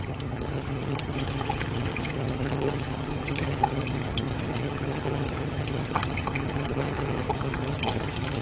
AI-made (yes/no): yes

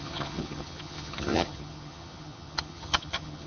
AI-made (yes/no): yes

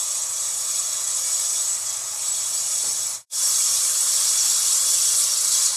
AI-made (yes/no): yes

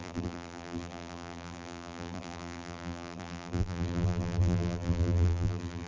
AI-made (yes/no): yes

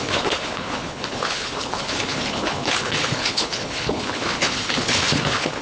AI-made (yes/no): yes